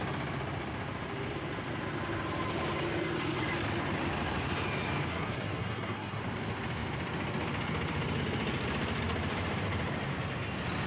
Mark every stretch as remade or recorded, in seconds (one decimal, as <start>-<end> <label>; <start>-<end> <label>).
0.0-5.1 recorded; 5.1-6.2 remade; 6.2-10.9 recorded